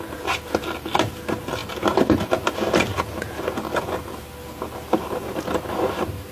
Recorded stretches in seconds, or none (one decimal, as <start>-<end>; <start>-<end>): 0.0-6.3